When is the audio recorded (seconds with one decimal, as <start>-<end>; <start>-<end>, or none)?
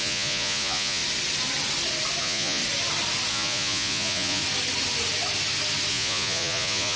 1.0-2.2; 2.6-3.3; 4.4-5.9